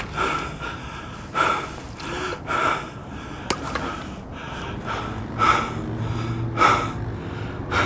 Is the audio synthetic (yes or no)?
no